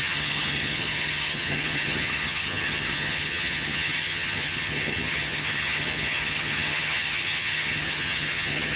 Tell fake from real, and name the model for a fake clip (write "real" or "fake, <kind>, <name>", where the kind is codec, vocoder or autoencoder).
fake, vocoder, HiFi-GAN